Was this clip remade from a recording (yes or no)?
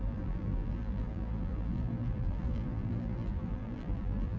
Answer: yes